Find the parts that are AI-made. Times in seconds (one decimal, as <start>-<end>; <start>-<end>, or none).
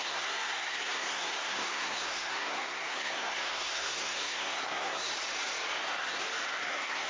0.0-5.1; 6.6-7.1